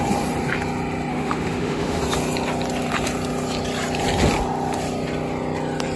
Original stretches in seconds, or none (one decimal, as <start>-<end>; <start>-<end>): 0.0-1.1; 2.0-6.0